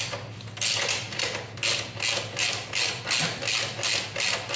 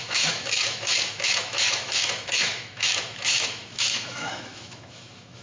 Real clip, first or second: first